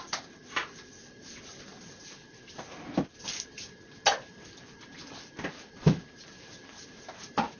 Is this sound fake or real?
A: real